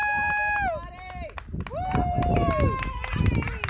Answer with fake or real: real